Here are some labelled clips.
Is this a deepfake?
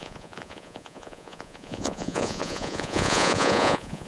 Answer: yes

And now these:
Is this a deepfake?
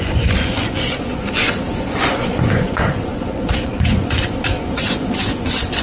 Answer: yes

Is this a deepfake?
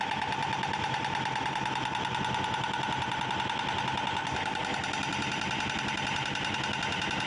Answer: no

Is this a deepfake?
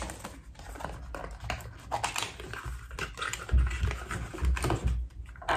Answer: no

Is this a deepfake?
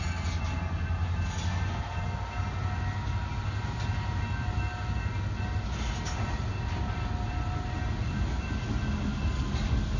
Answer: no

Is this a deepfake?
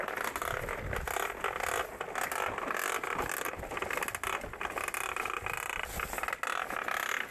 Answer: no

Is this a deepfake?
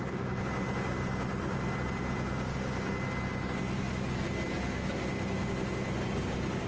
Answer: no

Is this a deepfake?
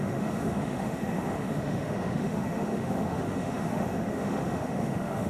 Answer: yes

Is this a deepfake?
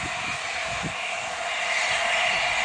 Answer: no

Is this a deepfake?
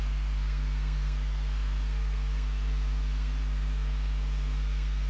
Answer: yes